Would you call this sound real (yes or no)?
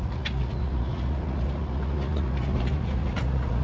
no